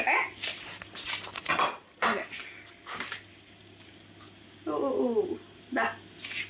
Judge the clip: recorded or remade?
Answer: recorded